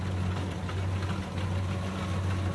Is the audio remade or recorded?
recorded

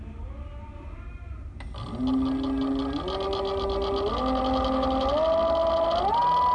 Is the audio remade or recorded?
recorded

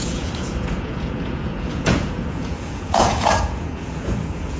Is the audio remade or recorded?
remade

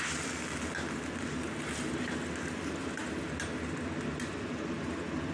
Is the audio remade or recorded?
recorded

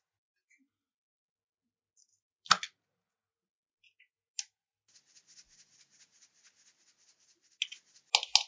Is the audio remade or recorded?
recorded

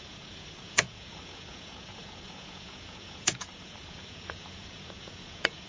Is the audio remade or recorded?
remade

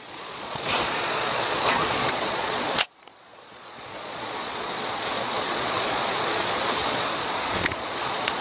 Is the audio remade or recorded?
remade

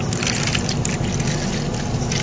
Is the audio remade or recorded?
recorded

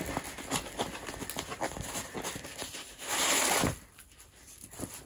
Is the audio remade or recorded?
recorded